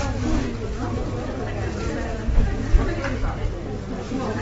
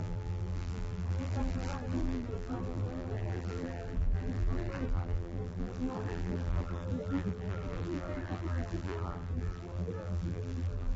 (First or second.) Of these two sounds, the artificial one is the second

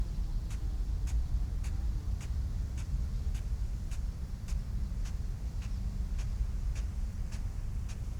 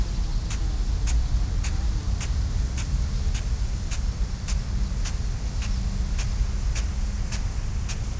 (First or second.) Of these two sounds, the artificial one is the first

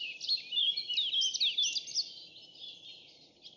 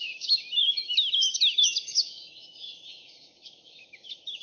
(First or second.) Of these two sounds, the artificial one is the second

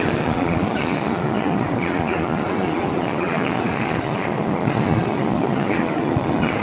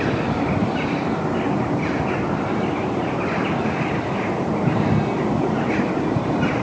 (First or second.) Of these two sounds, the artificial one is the first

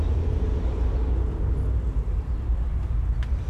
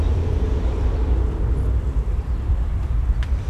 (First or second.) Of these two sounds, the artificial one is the second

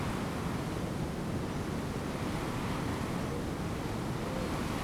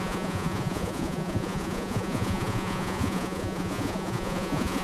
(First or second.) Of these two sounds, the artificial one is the second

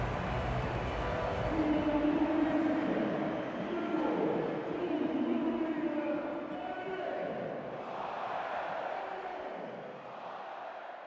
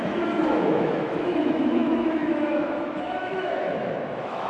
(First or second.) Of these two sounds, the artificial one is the second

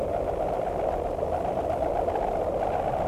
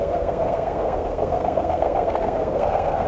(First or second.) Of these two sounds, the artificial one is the second